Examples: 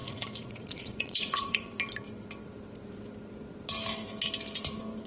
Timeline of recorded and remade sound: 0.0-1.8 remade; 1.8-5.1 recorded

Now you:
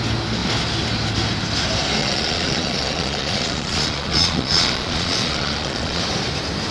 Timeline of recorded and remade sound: 0.0-2.0 recorded; 2.0-6.0 remade; 6.0-6.7 recorded